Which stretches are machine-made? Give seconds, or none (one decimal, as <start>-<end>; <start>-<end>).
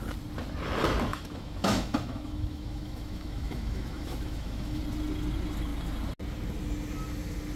1.1-4.8